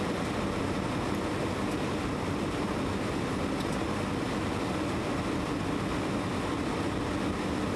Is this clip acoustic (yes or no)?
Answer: yes